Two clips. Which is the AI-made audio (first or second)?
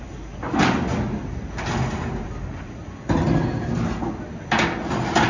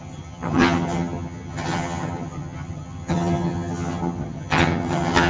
second